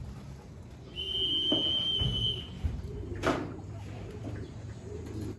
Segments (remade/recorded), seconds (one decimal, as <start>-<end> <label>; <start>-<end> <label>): 0.0-5.4 remade